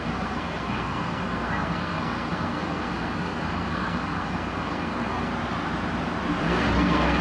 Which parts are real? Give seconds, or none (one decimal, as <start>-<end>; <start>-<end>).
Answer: 5.3-6.4